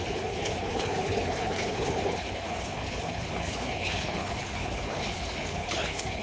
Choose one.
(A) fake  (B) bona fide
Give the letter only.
A